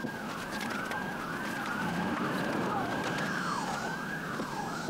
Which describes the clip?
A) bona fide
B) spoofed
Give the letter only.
B